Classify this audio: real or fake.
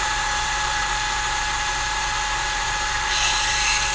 fake